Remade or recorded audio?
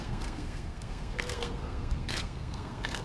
remade